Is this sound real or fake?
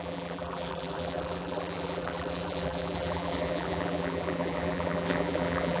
fake